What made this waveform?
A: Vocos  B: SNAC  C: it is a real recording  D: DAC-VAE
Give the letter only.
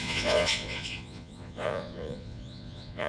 A